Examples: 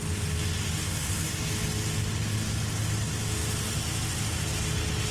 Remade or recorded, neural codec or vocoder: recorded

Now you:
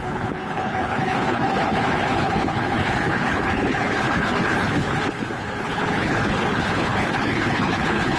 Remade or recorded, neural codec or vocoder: remade, codec, HILCodec